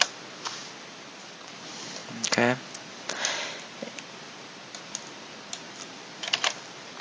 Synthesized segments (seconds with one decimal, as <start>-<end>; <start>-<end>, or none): 0.0-0.6; 1.5-2.0; 2.8-7.0